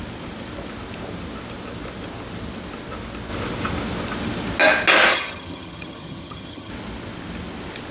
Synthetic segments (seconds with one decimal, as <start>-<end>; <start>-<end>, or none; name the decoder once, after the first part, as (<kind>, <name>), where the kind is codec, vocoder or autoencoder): 5.1-6.7 (vocoder, HiFi-GAN)

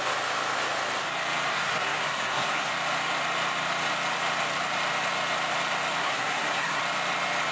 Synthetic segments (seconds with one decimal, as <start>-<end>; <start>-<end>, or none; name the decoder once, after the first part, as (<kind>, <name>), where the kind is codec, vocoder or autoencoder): 1.5-2.7 (codec, SNAC); 6.0-6.8

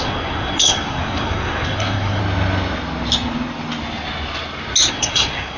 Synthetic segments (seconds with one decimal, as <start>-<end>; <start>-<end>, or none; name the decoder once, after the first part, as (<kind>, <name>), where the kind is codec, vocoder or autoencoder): 0.0-2.2 (codec, SNAC); 4.9-5.6

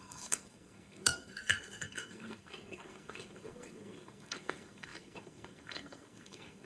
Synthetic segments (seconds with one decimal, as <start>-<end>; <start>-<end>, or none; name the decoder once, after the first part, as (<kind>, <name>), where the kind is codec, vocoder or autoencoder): 0.0-6.7 (codec, SNAC)

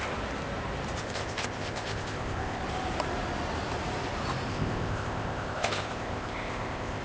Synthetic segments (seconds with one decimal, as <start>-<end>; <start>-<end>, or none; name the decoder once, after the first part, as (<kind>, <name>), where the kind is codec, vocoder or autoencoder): 1.0-2.6 (codec, ZipCodec); 4.5-7.0